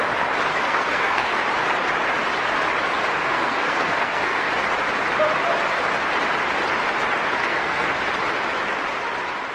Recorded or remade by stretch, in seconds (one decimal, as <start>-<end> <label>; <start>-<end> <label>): 0.0-0.5 recorded; 0.5-1.4 remade; 1.4-3.2 recorded; 3.2-4.5 remade; 4.5-7.4 recorded; 7.4-7.9 remade; 7.9-9.5 recorded